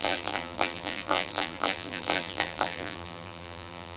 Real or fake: fake